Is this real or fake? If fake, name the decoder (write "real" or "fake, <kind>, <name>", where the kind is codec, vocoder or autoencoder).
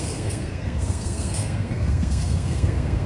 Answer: fake, codec, SNAC